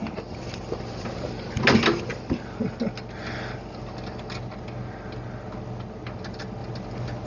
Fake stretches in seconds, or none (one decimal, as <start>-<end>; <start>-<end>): none